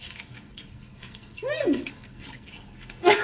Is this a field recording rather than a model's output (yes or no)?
no